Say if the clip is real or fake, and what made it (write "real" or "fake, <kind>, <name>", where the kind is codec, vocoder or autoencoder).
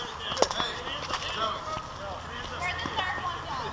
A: real